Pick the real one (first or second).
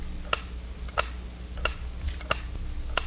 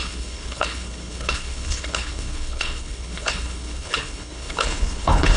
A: first